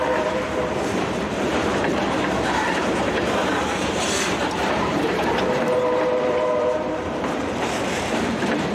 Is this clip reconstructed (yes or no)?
yes